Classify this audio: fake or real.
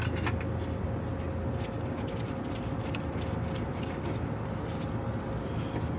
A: real